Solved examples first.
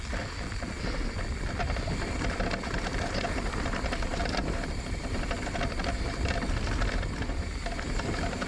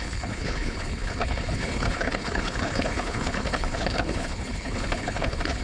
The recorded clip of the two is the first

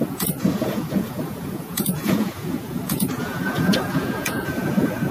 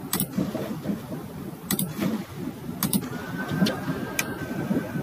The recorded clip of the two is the second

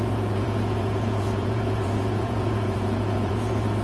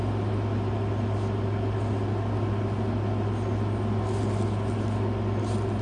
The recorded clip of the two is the second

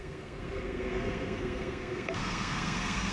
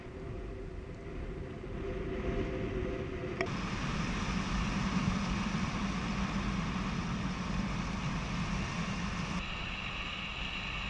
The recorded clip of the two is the second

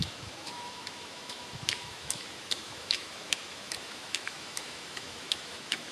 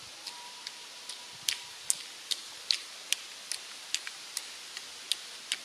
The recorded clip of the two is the second